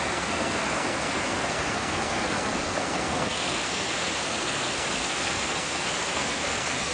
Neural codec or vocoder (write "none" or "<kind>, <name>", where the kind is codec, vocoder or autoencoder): codec, SNAC